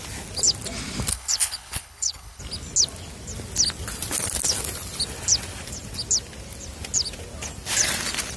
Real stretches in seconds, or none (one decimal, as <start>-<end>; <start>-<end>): 0.0-1.1; 2.4-8.4

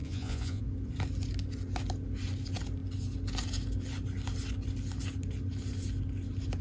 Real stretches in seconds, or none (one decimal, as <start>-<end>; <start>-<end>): 0.6-6.6

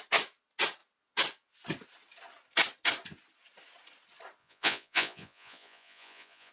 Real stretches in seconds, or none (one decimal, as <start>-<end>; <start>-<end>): 0.0-4.4

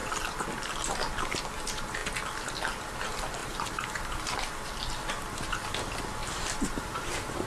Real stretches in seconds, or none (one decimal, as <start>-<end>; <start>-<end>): 0.0-3.4; 4.5-6.2

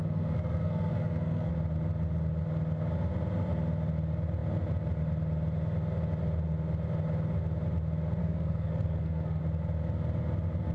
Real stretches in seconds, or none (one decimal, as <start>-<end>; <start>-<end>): 1.5-8.2; 9.4-10.7

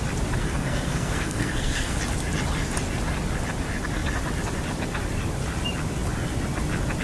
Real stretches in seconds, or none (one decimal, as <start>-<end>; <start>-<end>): 0.0-0.4; 2.0-7.0